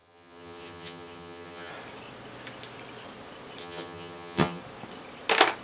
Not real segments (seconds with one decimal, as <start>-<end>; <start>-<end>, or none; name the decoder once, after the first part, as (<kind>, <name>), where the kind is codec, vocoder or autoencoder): 0.0-1.7 (vocoder, HiFi-GAN); 3.6-4.6

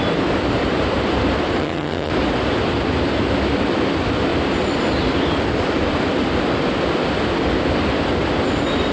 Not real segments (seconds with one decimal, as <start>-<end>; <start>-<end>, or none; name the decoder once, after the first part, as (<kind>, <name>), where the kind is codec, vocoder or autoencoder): 1.6-2.1 (vocoder, HiFi-GAN)

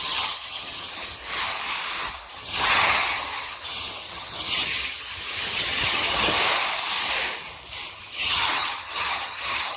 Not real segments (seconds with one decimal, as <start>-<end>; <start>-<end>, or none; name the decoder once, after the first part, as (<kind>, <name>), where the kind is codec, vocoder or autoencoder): 0.0-1.2 (vocoder, HiFi-GAN); 2.3-6.4; 7.9-9.8